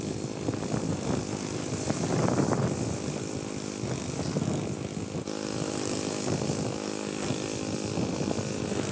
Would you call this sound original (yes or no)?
yes